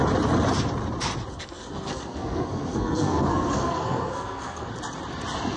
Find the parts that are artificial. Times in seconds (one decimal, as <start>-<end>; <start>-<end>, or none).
1.3-4.7